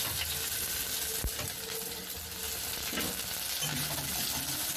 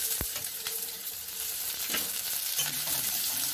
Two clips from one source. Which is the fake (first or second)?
second